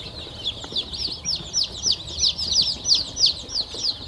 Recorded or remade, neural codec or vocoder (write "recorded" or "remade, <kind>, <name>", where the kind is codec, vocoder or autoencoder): recorded